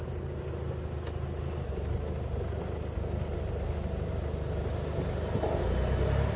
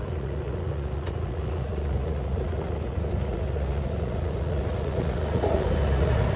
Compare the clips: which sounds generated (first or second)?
second